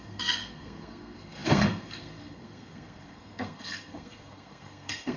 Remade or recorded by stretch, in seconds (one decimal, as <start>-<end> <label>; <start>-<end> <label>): 0.0-5.2 remade